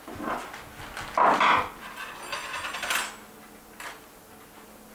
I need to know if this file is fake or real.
real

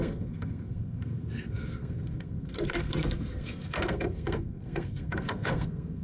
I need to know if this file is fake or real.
fake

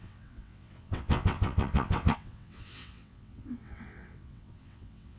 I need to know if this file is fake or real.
fake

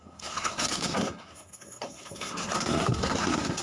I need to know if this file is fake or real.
fake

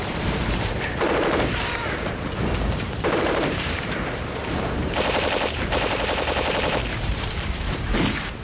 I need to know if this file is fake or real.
fake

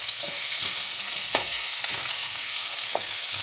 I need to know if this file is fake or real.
fake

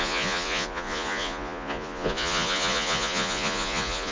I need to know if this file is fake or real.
fake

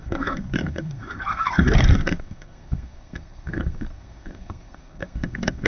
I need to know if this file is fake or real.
fake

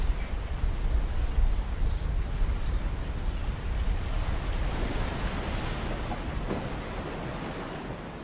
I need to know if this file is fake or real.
real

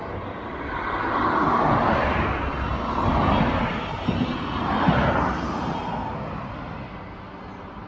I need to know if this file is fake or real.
real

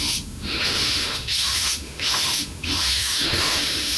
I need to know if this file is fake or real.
fake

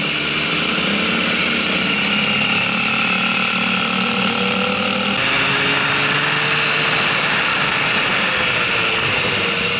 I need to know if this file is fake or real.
real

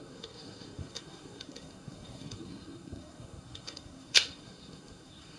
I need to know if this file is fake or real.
fake